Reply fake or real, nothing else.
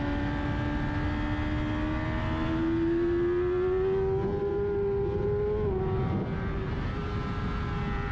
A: real